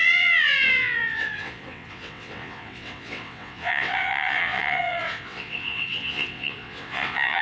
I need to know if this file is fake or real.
fake